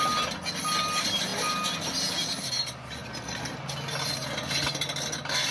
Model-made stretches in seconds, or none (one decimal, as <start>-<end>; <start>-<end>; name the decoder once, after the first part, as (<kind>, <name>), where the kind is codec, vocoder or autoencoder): none